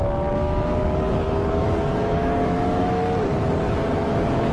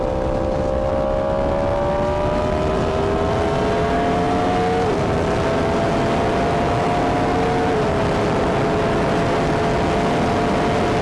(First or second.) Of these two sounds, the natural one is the second